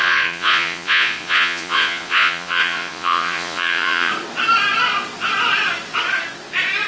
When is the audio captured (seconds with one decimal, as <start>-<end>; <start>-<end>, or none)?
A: 4.1-6.9